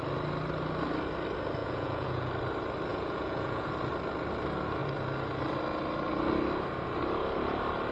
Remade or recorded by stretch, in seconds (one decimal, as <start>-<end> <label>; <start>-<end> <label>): 0.0-1.6 recorded; 1.6-2.3 remade; 2.3-2.9 recorded; 2.9-3.7 remade; 3.7-7.9 recorded